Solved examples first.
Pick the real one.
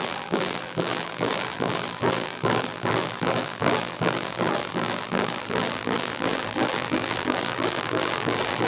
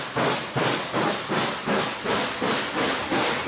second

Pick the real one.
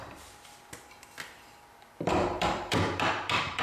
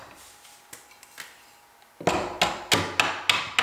second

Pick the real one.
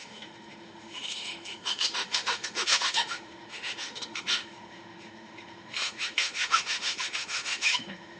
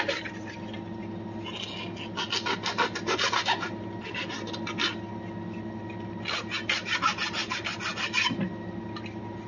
second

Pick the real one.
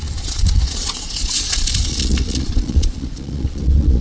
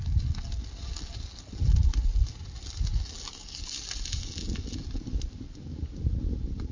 second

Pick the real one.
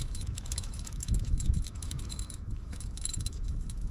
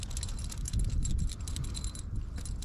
second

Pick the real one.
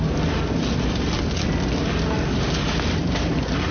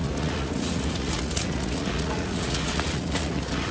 first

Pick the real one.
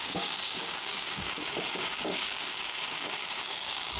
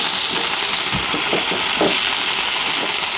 second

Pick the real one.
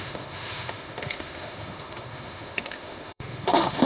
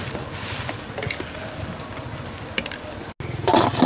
second